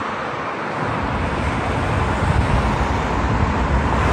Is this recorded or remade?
recorded